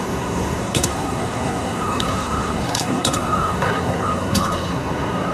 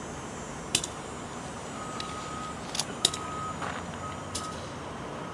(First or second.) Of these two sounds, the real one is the second